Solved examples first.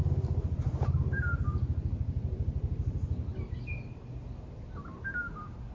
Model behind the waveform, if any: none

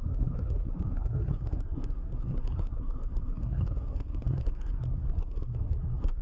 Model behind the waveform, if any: codec, SNAC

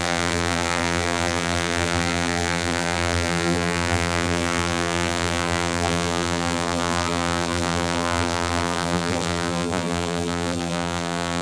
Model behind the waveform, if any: vocoder, BigVGAN v2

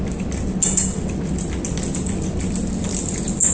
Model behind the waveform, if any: none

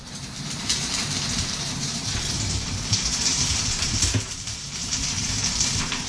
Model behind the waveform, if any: vocoder, BigVGAN v2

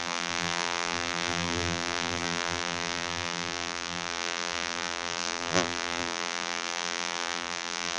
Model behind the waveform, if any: vocoder, BigVGAN v2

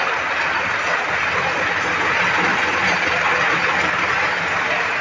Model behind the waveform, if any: none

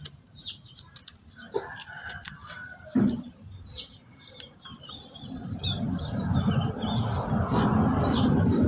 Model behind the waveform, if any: vocoder, BigVGAN v2